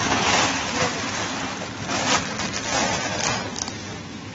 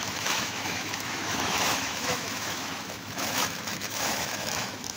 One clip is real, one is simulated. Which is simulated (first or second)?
second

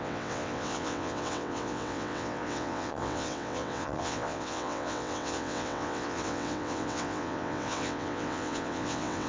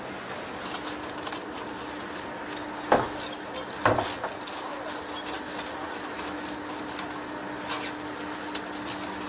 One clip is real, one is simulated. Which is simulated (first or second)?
first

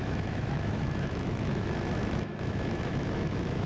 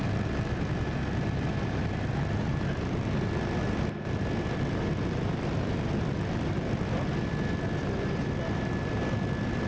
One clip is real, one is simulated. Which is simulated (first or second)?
first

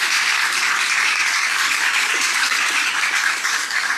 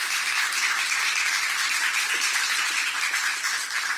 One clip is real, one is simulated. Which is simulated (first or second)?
first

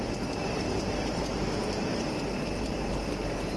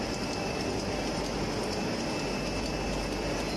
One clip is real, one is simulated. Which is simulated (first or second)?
first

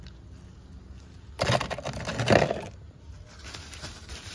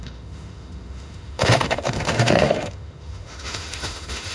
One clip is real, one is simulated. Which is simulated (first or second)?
second